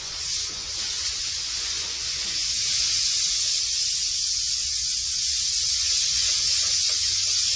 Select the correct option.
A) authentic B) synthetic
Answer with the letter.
B